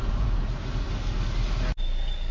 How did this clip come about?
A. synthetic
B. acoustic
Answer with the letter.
B